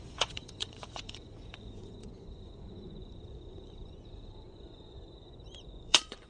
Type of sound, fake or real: fake